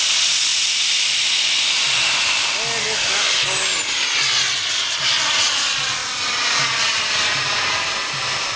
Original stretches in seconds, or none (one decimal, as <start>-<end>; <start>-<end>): 0.0-8.6